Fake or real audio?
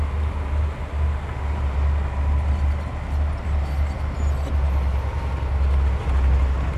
real